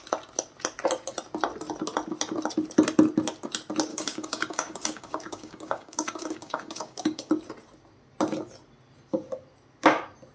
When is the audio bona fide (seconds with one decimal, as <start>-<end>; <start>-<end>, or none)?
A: 0.0-3.9; 7.3-10.3